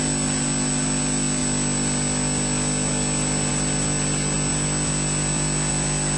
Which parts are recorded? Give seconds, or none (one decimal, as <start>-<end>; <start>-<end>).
0.0-6.2